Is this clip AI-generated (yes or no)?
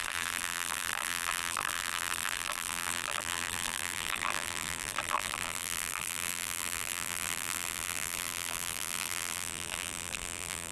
yes